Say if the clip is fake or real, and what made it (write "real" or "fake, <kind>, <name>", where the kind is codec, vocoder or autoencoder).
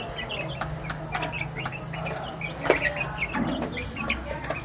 real